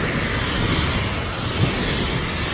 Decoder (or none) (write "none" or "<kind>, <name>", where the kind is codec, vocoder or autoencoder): none